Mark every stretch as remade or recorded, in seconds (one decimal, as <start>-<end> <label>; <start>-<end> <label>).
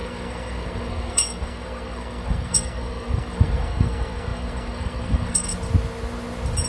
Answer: 0.0-5.5 remade; 5.5-6.7 recorded